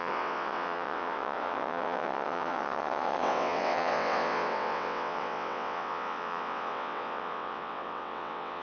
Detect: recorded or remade remade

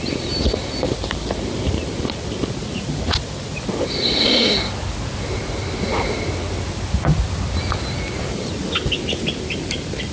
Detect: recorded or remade recorded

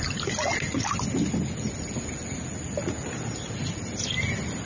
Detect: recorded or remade recorded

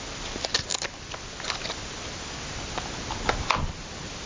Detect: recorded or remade recorded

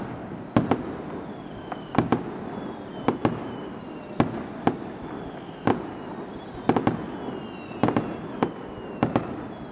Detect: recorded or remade recorded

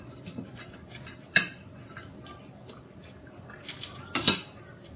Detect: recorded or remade remade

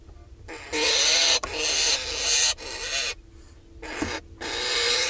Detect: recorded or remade recorded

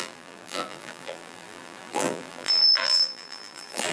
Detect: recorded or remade remade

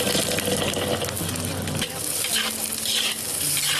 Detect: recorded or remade recorded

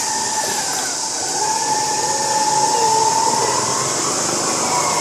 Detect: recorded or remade recorded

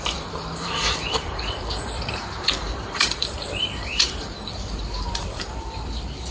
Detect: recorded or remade remade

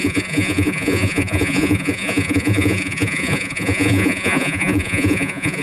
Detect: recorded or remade remade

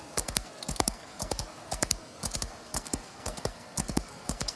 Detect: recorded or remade remade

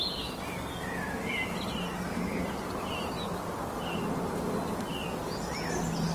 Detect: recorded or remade recorded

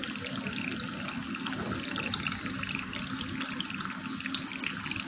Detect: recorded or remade recorded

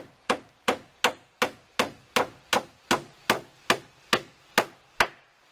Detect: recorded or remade recorded